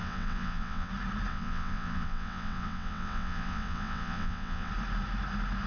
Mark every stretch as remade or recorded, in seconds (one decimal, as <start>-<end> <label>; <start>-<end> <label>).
0.0-0.9 remade; 0.9-1.3 recorded; 1.3-4.7 remade; 4.7-5.7 recorded